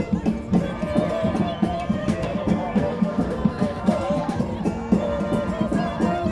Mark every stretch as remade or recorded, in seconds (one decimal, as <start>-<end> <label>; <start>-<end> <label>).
0.0-2.0 recorded; 2.0-4.4 remade; 4.4-6.3 recorded